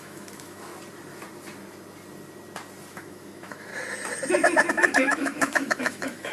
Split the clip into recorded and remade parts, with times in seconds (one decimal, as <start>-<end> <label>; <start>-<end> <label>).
0.0-0.7 remade; 0.7-2.9 recorded; 2.9-3.7 remade; 3.7-4.7 recorded; 4.7-6.3 remade